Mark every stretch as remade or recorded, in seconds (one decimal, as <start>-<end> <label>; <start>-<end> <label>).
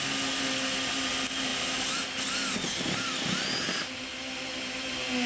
0.0-5.3 recorded